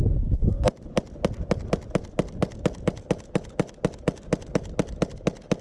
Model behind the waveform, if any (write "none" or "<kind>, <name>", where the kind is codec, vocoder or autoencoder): none